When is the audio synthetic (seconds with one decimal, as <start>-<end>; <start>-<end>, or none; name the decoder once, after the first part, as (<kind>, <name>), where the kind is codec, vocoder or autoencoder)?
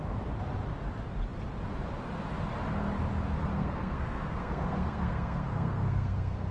3.5-6.5 (codec, SNAC)